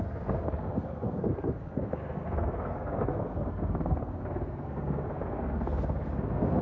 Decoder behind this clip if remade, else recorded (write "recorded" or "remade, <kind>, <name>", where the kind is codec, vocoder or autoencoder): remade, codec, SNAC